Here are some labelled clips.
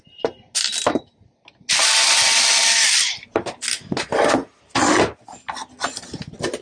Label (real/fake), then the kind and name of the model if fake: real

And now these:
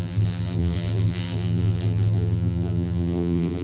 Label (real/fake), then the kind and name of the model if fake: fake, vocoder, BigVGAN v2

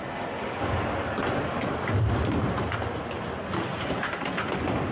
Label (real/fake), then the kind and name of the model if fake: real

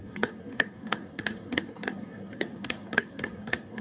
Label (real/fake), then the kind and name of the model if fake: fake, codec, SNAC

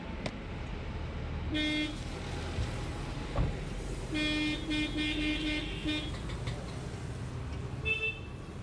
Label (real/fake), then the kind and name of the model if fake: real